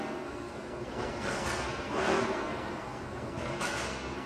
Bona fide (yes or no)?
no